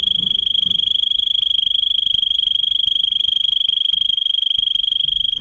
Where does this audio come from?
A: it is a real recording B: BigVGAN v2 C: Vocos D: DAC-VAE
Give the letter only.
A